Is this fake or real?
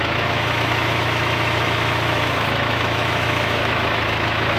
fake